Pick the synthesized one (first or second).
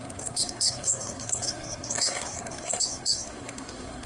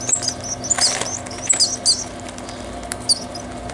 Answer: first